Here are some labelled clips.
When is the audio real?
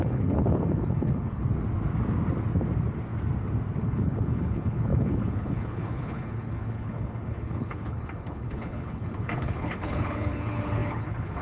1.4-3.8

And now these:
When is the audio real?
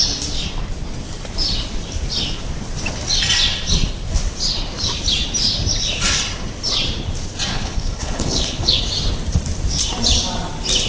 0.0-7.5; 8.8-10.9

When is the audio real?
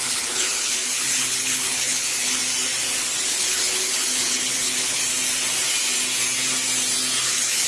2.4-3.3; 5.0-7.2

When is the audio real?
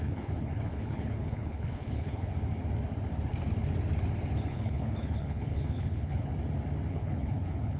2.3-4.5; 6.3-6.9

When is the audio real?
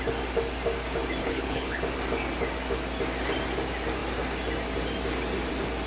0.0-1.2; 1.8-5.9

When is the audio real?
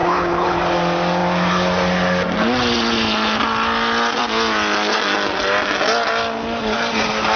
0.6-7.4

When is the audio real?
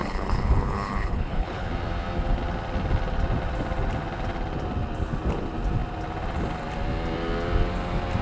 1.7-8.2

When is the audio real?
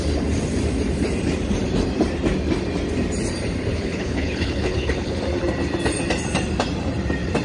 0.0-3.7; 5.2-7.4